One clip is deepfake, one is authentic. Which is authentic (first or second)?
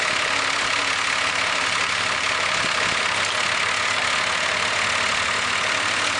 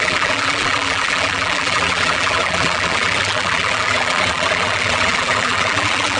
first